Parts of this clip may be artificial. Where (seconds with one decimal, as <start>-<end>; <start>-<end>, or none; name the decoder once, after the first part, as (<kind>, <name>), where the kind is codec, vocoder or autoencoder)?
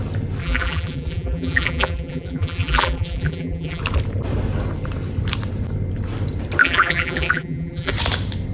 0.4-3.8 (vocoder, BigVGAN v2); 6.6-7.9